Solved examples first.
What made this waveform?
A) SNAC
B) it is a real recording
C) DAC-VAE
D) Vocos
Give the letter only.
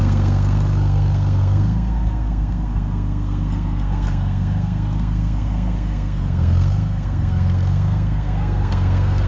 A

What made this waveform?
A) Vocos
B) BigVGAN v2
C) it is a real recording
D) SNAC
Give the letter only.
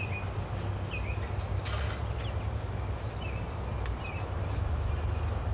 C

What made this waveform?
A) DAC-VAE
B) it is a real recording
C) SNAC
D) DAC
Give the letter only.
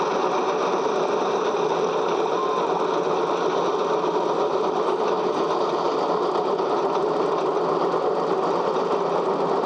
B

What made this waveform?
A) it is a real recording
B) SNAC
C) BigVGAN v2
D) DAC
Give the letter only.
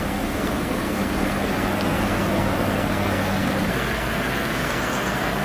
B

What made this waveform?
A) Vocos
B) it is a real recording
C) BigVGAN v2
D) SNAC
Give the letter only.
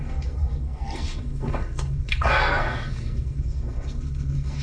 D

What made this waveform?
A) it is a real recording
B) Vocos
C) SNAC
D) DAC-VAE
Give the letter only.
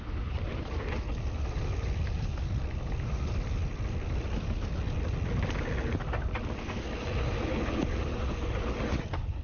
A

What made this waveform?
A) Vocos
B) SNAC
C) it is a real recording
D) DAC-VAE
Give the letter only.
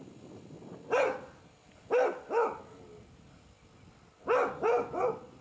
C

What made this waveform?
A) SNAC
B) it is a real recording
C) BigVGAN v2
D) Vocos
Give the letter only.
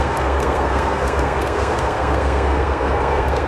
A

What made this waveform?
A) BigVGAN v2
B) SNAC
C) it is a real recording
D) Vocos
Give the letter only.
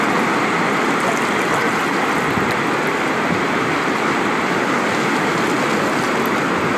C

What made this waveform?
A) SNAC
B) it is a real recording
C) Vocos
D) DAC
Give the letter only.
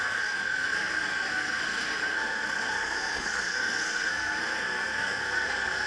A